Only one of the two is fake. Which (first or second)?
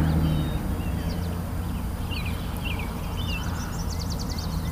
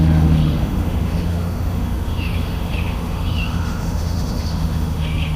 second